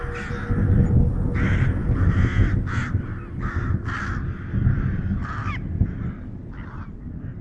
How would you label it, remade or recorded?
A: recorded